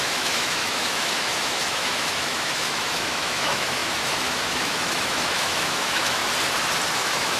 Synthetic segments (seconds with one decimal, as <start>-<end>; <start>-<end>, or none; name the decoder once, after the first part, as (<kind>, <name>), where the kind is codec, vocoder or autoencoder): 0.0-6.2 (autoencoder, DAC-VAE); 6.9-7.4